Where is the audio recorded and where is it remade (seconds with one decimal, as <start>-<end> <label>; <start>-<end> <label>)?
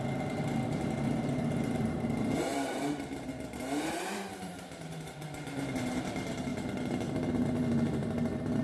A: 0.0-6.5 remade; 6.5-7.3 recorded; 7.3-8.6 remade